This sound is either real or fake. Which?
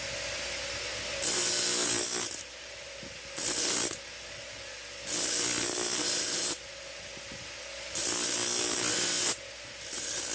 real